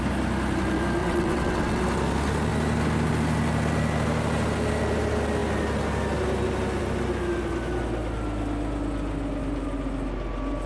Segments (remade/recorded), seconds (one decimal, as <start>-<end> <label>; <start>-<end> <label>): 0.0-1.0 recorded; 1.0-1.8 remade; 1.8-10.7 recorded